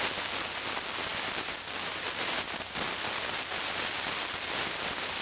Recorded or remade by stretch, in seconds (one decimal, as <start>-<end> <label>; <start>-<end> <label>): 0.0-5.2 recorded